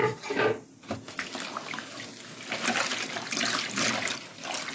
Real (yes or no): yes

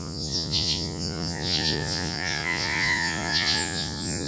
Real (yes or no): no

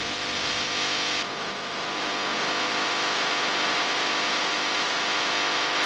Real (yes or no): yes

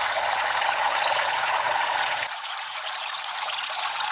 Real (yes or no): no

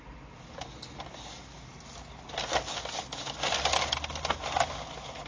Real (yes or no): yes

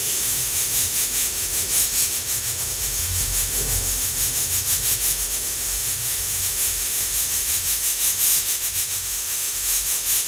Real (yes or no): no